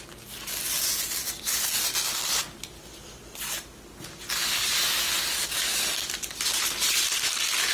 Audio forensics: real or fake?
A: real